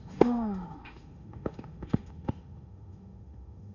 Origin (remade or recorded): remade